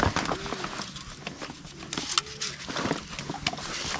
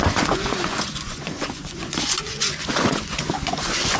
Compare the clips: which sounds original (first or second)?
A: first